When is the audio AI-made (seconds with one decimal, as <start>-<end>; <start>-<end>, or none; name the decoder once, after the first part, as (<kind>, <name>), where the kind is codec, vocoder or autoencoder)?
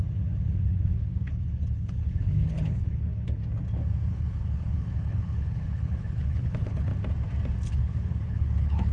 0.0-3.4 (codec, HILCodec); 4.1-6.9; 7.7-8.9